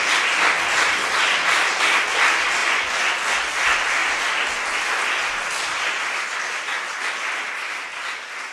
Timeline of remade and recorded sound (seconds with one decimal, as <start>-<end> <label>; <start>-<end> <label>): 0.0-2.6 recorded; 2.6-3.1 remade; 3.1-8.5 recorded